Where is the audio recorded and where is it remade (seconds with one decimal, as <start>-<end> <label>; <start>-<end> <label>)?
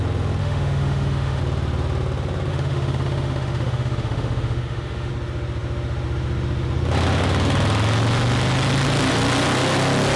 0.0-0.4 recorded; 0.4-1.4 remade; 1.4-2.5 recorded; 2.5-5.1 remade; 5.1-10.2 recorded